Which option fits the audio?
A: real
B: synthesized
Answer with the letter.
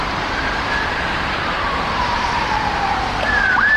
B